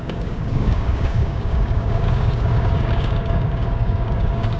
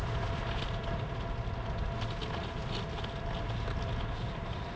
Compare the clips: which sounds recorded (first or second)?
second